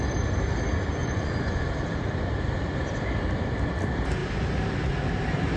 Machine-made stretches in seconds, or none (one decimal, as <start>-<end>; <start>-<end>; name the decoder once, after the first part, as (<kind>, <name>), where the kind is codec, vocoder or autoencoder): 1.0-1.7 (vocoder, Vocos)